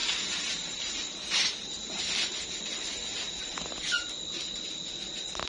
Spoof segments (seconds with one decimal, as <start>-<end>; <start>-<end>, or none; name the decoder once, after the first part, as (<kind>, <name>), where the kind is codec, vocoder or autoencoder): 0.0-2.0 (vocoder, BigVGAN v2)